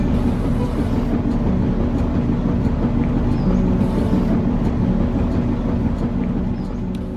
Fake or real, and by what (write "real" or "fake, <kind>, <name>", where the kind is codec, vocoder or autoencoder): real